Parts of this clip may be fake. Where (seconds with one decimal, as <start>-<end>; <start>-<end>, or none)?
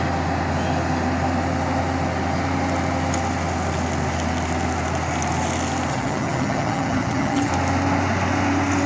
5.9-7.5